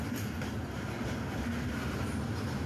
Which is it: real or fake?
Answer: real